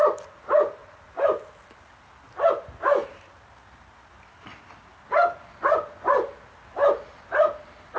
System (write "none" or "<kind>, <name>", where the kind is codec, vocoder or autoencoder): none